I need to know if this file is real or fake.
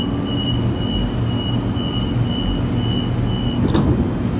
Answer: real